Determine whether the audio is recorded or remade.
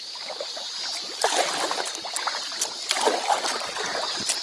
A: recorded